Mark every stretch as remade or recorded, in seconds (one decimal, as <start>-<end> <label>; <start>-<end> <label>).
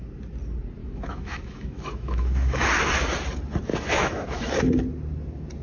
0.0-0.8 recorded; 0.8-2.7 remade; 2.7-3.7 recorded; 3.7-4.5 remade; 4.5-5.6 recorded